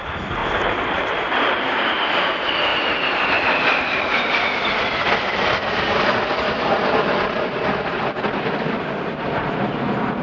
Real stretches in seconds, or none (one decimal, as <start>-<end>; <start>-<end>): 0.0-0.4; 1.8-2.7; 4.2-10.2